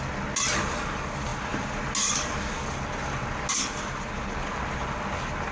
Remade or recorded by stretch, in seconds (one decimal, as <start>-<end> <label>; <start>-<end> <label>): 0.0-5.5 recorded